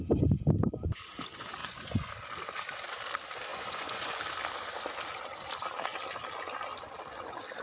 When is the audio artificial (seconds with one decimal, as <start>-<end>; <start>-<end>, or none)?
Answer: 1.6-2.1; 3.5-4.2